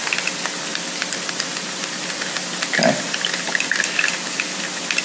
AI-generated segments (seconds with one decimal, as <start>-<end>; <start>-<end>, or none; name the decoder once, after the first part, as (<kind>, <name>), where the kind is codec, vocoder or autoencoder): none